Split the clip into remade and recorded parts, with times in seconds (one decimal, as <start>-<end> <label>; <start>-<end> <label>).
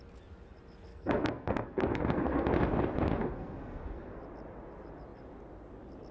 0.0-0.9 recorded; 0.9-2.5 remade; 2.5-3.2 recorded; 3.2-4.2 remade; 4.2-6.1 recorded